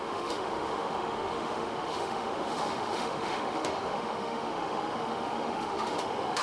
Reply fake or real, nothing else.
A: fake